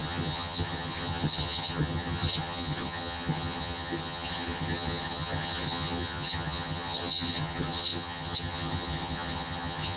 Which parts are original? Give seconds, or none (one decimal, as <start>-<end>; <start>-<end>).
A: none